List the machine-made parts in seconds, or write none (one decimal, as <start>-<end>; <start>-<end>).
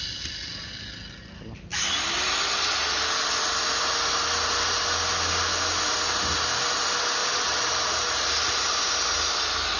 7.2-8.8